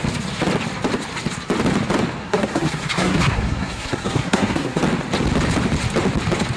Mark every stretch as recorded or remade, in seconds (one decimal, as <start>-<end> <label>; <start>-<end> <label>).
0.0-2.2 recorded; 2.2-4.8 remade; 4.8-6.6 recorded